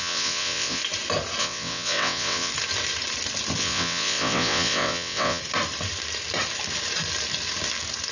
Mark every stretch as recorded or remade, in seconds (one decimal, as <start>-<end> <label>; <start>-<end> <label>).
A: 0.0-0.8 remade; 0.8-1.4 recorded; 1.4-2.5 remade; 2.5-3.6 recorded; 3.6-5.4 remade; 5.4-8.1 recorded